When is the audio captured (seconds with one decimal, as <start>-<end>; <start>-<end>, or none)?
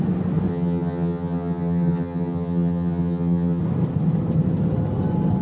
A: 0.0-0.5; 3.6-5.4